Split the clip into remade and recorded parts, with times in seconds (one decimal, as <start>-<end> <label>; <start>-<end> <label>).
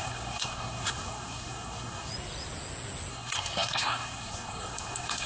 0.0-2.1 remade; 2.1-3.1 recorded; 3.1-5.3 remade